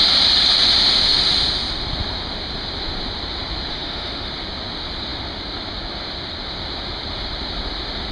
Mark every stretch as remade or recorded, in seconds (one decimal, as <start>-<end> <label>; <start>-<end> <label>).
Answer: 0.0-3.7 recorded; 3.7-4.3 remade; 4.3-8.1 recorded